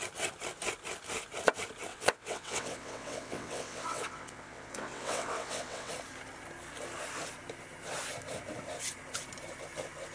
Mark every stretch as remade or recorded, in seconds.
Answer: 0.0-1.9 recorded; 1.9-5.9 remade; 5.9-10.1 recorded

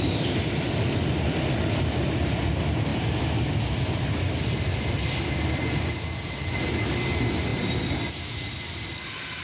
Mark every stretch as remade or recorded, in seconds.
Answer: 0.0-9.4 recorded

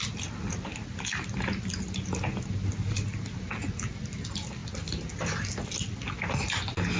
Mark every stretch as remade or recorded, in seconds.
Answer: 0.0-7.0 recorded

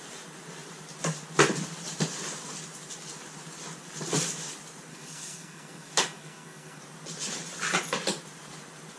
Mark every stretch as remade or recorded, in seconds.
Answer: 0.0-4.9 recorded; 4.9-6.8 remade; 6.8-9.0 recorded

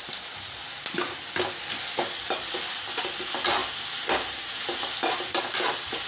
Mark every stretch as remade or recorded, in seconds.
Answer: 0.0-6.1 recorded

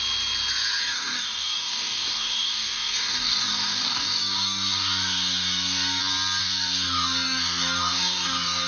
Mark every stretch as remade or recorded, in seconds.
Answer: 0.0-0.8 recorded; 0.8-6.0 remade; 6.0-6.4 recorded; 6.4-8.7 remade

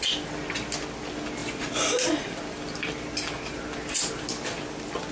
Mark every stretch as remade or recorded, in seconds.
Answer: 0.0-5.1 recorded

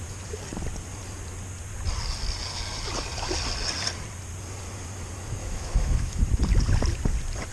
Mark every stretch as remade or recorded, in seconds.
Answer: 0.0-5.4 recorded; 5.4-6.2 remade; 6.2-7.5 recorded